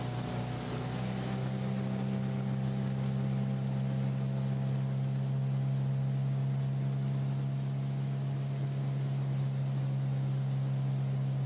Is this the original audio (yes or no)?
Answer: yes